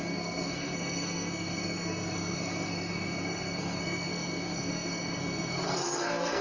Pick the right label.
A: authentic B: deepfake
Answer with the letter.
B